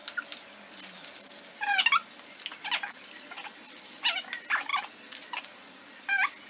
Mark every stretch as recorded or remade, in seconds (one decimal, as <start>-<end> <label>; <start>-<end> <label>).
0.0-6.5 remade